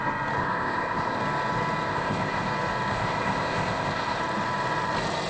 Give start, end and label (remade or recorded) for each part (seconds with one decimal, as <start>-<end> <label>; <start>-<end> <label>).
0.0-0.4 recorded; 0.4-1.2 remade; 1.2-1.9 recorded; 1.9-2.5 remade; 2.5-2.9 recorded; 2.9-4.2 remade; 4.2-5.3 recorded